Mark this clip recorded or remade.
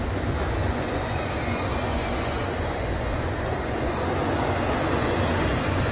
remade